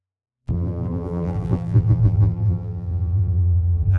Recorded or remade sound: remade